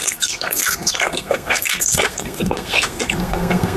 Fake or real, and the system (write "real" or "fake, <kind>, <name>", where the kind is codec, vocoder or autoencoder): fake, codec, SNAC